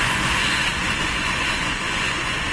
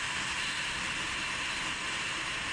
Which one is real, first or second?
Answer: second